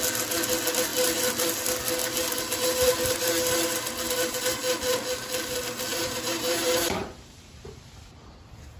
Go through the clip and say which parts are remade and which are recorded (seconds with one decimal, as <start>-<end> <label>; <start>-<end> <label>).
0.0-5.9 recorded; 5.9-8.0 remade; 8.0-8.8 recorded